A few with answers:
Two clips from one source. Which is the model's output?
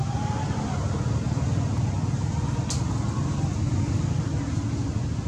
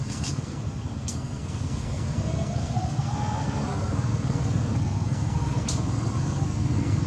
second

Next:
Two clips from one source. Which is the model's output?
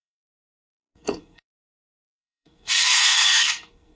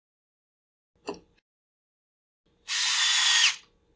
first